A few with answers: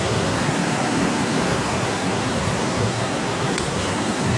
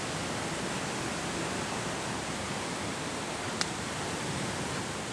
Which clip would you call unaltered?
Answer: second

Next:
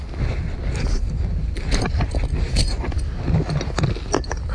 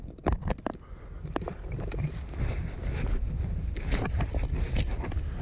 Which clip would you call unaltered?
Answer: first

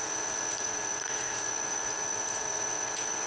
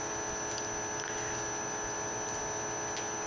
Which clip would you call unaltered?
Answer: second